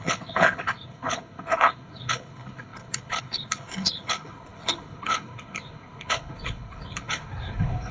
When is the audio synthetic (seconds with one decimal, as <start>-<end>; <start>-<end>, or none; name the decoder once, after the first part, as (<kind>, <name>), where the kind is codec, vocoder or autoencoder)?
0.0-7.9 (codec, HILCodec)